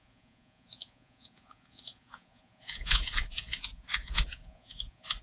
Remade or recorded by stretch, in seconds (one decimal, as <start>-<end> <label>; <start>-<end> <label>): 0.0-5.2 remade